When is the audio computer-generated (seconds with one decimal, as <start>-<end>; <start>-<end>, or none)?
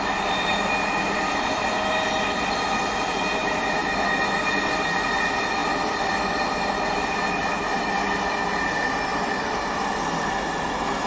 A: 5.6-6.2; 9.1-11.1